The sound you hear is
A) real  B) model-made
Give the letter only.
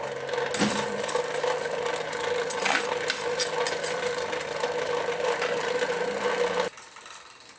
A